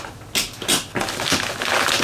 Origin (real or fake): real